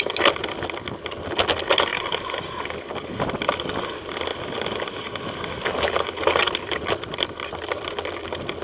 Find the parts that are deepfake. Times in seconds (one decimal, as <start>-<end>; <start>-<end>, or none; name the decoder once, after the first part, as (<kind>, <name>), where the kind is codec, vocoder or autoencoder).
1.9-2.8 (vocoder, BigVGAN v2); 4.3-7.1